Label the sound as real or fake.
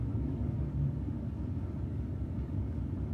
fake